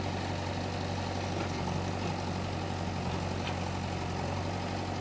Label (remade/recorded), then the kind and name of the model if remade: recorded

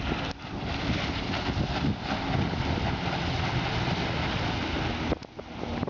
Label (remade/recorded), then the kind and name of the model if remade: recorded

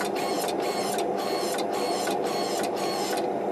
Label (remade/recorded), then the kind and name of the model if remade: recorded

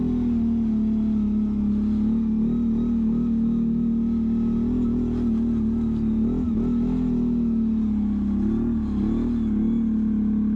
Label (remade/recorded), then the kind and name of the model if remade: recorded